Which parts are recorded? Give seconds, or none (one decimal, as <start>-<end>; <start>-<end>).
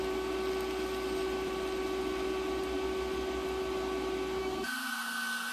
0.0-4.4